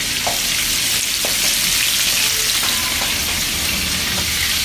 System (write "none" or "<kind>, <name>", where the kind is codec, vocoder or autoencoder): none